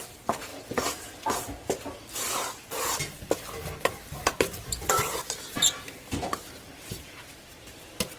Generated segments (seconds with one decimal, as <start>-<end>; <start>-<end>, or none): 0.0-0.5; 3.8-8.2